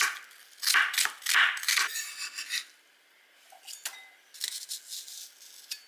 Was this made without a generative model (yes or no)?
yes